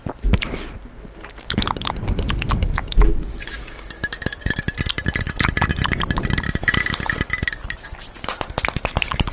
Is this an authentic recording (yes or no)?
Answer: yes